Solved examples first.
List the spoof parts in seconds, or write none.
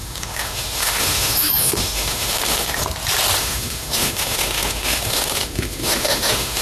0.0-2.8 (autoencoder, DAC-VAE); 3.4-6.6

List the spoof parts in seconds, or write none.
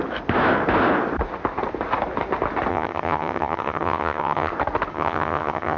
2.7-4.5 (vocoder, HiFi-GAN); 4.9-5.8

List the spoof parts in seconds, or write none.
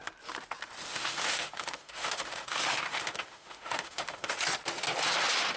0.9-4.3 (autoencoder, DAC-VAE)